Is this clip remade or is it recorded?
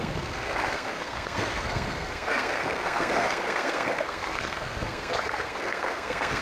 remade